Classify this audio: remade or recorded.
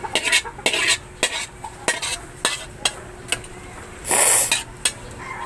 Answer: recorded